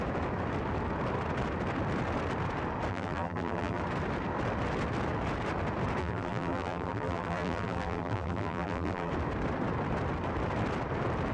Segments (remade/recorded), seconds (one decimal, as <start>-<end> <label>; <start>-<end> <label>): 0.0-2.9 recorded; 2.9-3.8 remade; 3.8-6.0 recorded; 6.0-9.1 remade; 9.1-11.3 recorded